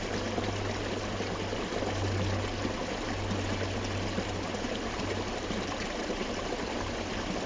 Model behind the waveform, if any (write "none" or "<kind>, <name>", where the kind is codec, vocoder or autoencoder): none